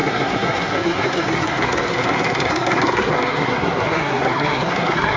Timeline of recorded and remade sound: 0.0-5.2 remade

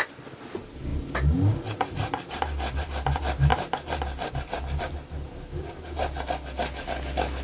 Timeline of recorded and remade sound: 0.0-7.4 recorded